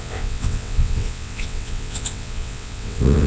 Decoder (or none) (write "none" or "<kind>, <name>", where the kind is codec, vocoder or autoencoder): vocoder, WaveNeXt